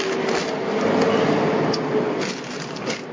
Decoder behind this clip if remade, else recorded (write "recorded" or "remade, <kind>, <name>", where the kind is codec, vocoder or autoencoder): recorded